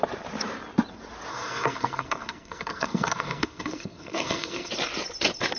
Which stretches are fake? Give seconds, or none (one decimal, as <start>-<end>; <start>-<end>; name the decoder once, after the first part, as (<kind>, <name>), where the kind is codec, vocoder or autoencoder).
1.3-4.7 (codec, SNAC)